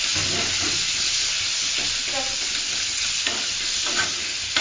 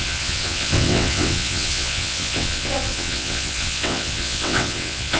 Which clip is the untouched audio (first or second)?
first